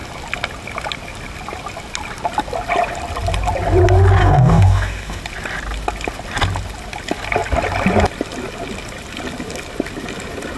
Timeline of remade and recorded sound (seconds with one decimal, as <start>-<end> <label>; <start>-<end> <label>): 0.0-4.2 recorded; 4.2-5.2 remade; 5.2-10.6 recorded